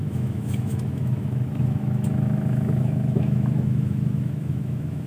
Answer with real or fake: fake